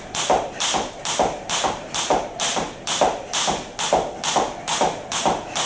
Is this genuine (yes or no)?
yes